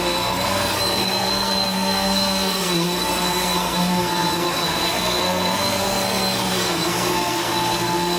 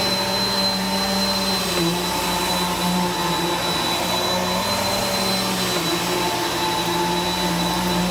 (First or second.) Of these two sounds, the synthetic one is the first